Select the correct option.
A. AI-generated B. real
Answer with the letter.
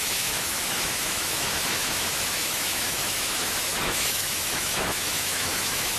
A